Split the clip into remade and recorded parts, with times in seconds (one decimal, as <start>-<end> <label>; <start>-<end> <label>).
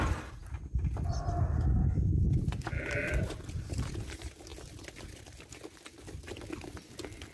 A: 0.0-7.3 recorded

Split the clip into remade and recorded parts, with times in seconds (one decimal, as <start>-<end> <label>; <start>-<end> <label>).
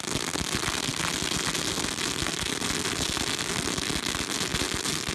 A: 0.0-5.1 recorded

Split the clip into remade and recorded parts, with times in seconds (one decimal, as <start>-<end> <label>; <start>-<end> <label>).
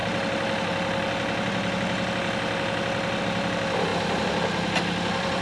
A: 0.0-3.2 recorded; 3.2-3.9 remade; 3.9-4.8 recorded; 4.8-5.4 remade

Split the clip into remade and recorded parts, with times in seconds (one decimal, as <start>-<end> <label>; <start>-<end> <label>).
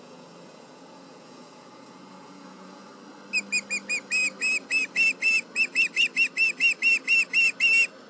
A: 0.0-2.9 remade; 2.9-8.1 recorded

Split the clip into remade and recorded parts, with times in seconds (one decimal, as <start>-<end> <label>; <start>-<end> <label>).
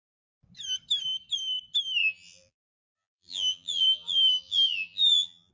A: 0.0-2.0 recorded; 2.0-5.5 remade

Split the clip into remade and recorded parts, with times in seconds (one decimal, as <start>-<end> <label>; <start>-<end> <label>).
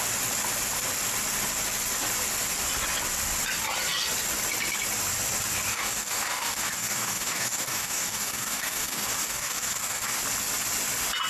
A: 0.0-5.7 recorded; 5.7-10.2 remade; 10.2-11.3 recorded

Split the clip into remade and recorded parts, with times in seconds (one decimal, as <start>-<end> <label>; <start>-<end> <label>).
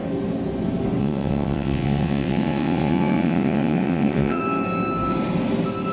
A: 0.0-1.0 recorded; 1.0-4.4 remade; 4.4-5.9 recorded